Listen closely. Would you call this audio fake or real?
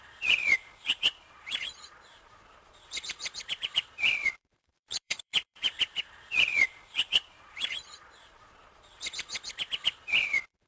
fake